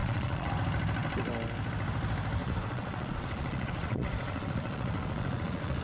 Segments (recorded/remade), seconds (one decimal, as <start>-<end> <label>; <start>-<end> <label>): 0.0-0.5 remade; 0.5-2.4 recorded; 2.4-5.8 remade